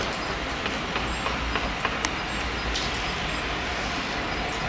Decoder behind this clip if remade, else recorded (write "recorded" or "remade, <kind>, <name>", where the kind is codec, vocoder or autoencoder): recorded